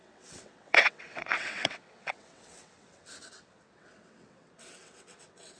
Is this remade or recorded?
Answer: remade